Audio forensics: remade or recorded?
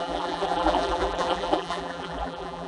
remade